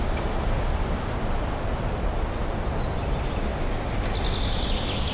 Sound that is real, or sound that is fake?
real